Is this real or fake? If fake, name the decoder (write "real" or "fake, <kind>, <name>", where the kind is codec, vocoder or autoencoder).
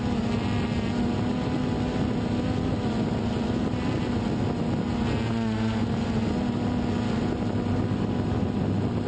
real